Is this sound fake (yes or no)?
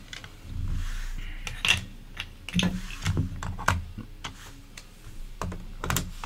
no